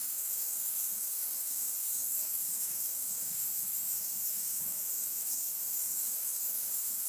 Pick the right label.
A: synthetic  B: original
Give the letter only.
A